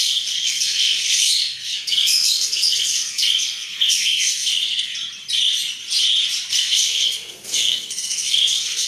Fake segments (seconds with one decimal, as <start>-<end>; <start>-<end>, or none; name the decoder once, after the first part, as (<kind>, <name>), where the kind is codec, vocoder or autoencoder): 0.0-4.9 (codec, SNAC); 6.5-8.9